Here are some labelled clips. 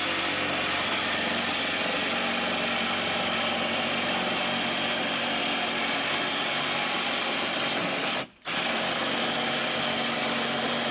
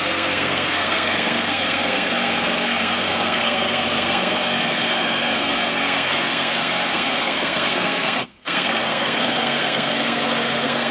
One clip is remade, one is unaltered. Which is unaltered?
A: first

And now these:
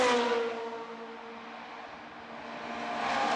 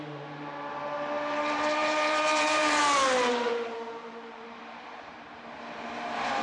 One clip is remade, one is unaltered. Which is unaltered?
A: first